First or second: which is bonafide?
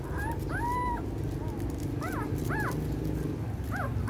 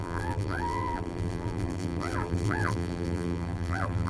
first